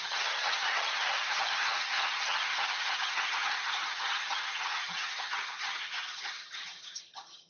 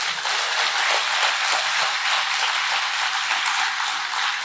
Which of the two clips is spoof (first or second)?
first